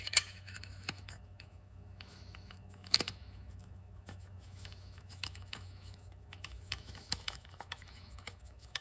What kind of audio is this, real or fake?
fake